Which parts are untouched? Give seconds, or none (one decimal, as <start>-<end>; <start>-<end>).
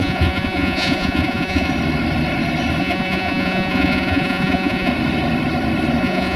1.7-2.8; 4.9-6.0